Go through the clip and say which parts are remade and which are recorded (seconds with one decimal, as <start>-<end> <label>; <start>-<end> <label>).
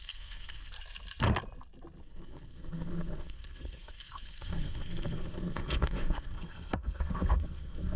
0.0-0.7 remade; 0.7-2.0 recorded; 2.0-8.0 remade